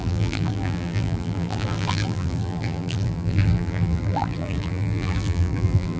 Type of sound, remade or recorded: remade